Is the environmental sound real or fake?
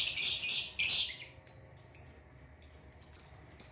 real